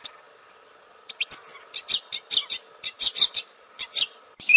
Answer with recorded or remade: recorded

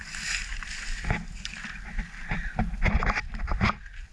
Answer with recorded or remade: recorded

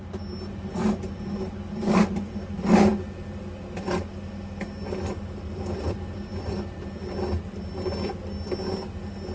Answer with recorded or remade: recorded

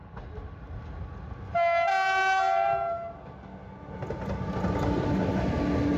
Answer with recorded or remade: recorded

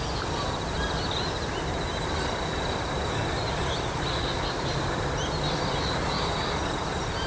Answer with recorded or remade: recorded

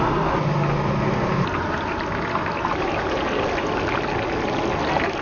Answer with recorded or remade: recorded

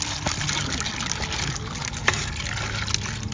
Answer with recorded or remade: recorded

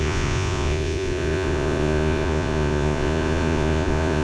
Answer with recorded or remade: remade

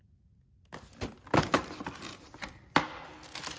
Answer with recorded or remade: recorded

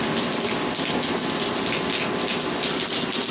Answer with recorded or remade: recorded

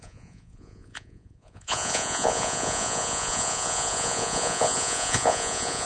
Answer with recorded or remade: remade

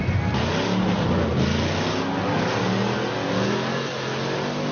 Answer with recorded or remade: recorded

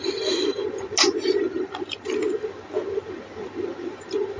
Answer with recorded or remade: recorded